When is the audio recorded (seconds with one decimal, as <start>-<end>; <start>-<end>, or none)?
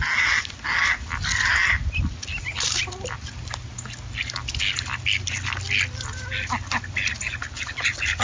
0.0-8.2